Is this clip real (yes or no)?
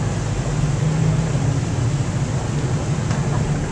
yes